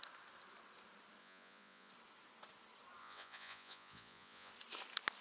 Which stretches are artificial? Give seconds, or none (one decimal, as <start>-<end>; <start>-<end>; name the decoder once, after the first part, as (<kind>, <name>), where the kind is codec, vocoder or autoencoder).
1.2-1.9 (vocoder, Vocos); 3.0-4.5